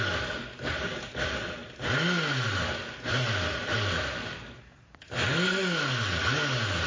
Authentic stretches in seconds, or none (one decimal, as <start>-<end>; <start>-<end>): 0.0-6.9